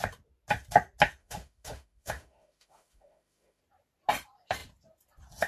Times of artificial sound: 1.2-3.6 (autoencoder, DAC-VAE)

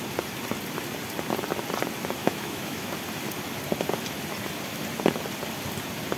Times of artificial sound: 2.2-2.9 (autoencoder, DAC-VAE)

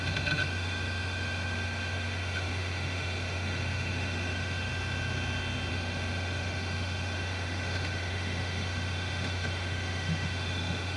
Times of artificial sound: 0.0-4.7 (autoencoder, DAC-VAE); 5.7-11.0

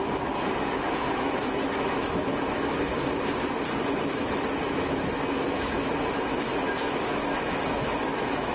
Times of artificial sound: 0.0-2.9 (autoencoder, DAC-VAE); 4.0-8.5

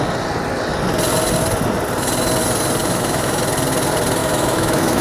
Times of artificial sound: 2.8-3.4 (autoencoder, DAC-VAE); 4.2-5.0

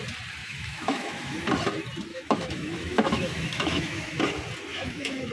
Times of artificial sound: 0.4-1.4 (autoencoder, DAC-VAE); 2.1-4.2; 4.7-5.3

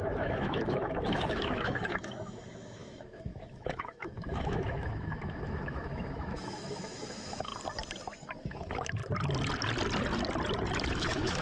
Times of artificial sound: 0.0-7.5 (autoencoder, DAC-VAE); 8.4-9.0; 10.9-11.4